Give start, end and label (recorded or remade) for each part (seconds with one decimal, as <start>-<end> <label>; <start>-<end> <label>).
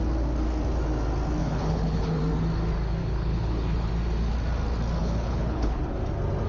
0.0-1.4 recorded; 1.4-2.2 remade; 2.2-3.0 recorded; 3.0-3.9 remade; 3.9-5.0 recorded; 5.0-5.8 remade; 5.8-6.5 recorded